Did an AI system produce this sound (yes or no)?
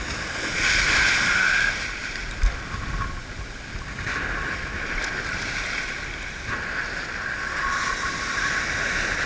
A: no